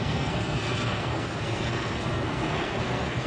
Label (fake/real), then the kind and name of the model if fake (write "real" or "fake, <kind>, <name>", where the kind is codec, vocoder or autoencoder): fake, codec, SNAC